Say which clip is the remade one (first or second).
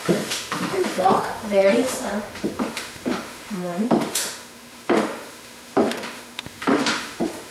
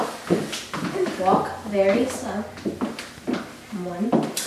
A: first